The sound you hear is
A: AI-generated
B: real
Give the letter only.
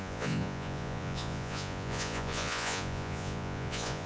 A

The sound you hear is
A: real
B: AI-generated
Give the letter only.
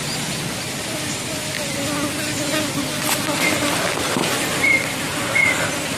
A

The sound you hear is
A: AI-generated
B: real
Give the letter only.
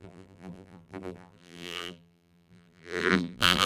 A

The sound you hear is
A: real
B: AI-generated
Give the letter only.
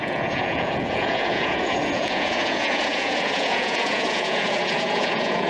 B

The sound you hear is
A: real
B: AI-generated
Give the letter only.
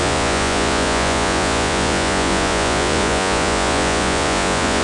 B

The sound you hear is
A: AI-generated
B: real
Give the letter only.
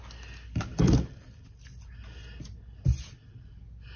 B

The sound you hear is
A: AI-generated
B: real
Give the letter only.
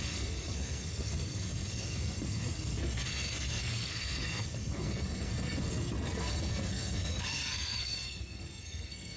A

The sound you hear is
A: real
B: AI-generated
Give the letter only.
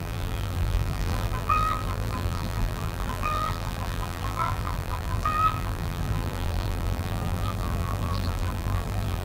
B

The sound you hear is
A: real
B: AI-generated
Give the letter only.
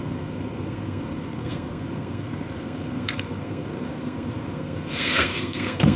B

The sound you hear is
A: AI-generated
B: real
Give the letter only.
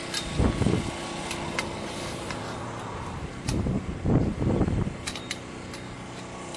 B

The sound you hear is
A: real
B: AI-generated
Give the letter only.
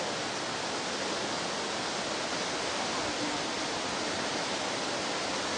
A